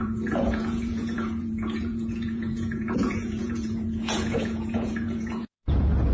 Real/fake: fake